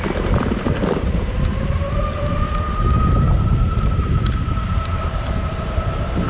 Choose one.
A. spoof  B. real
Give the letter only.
B